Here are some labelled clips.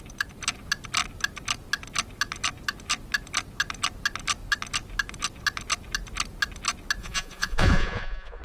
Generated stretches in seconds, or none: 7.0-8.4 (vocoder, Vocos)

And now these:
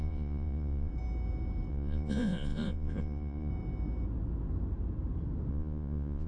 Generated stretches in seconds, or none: 0.0-0.9 (vocoder, Vocos); 1.7-3.5; 5.5-6.3

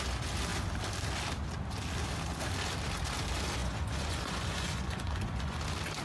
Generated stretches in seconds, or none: 3.6-5.6 (vocoder, Vocos)